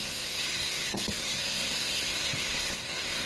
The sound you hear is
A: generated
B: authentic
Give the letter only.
A